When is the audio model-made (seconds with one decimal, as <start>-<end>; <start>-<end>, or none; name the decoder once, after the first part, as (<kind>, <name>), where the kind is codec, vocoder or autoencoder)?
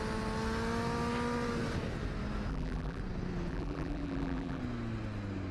2.5-3.0 (vocoder, BigVGAN v2); 3.5-4.6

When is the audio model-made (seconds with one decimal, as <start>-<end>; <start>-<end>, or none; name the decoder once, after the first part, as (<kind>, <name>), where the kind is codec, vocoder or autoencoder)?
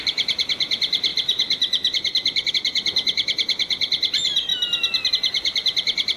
0.0-4.5 (vocoder, BigVGAN v2); 5.1-6.2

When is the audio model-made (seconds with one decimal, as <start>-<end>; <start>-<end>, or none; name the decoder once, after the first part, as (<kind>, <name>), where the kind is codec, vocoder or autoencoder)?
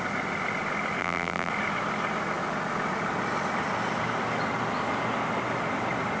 1.0-1.5 (vocoder, BigVGAN v2)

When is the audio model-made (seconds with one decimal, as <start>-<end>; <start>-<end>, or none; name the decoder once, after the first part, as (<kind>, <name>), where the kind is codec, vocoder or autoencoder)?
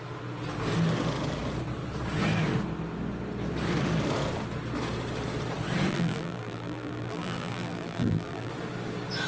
5.9-8.5 (vocoder, BigVGAN v2)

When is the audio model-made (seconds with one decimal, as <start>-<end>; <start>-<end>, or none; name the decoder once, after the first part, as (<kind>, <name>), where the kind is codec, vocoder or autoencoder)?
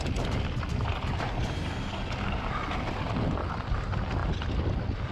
none